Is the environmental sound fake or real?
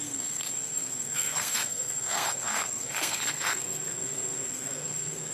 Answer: fake